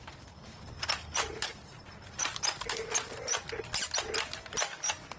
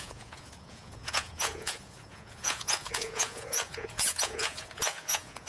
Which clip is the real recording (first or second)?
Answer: first